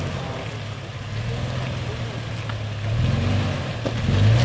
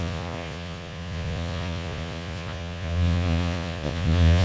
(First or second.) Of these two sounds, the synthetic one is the second